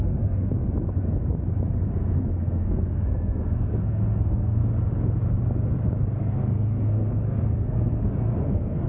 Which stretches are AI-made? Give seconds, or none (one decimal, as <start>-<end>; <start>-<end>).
0.0-0.6; 2.2-4.6; 6.2-8.9